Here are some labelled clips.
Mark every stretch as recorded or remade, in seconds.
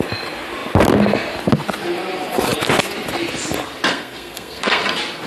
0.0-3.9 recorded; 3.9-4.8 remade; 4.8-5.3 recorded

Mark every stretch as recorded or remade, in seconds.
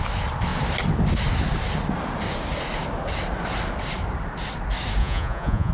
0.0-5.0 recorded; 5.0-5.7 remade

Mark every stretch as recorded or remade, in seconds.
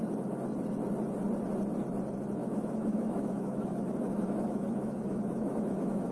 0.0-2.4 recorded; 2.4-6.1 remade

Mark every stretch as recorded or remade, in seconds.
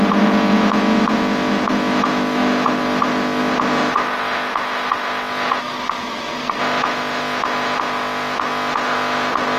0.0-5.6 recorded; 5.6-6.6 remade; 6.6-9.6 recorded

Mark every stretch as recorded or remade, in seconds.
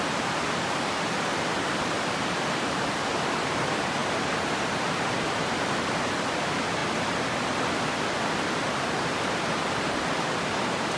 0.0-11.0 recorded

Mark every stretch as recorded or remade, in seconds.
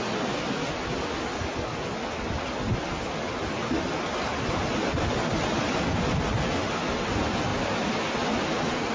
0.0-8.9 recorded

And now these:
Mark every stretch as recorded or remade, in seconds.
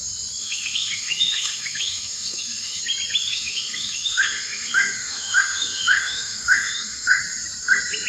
0.0-0.4 recorded; 0.4-2.8 remade; 2.8-3.3 recorded; 3.3-7.2 remade; 7.2-8.1 recorded